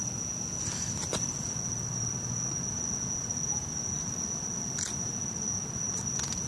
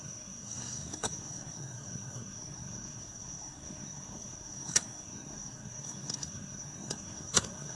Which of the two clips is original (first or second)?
first